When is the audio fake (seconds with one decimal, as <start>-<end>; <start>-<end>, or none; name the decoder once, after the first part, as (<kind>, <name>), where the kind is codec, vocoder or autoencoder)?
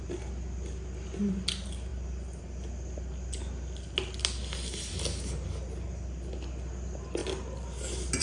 none